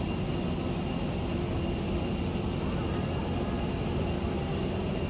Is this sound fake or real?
real